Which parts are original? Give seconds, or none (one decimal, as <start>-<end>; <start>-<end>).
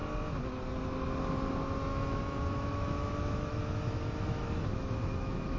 0.0-1.9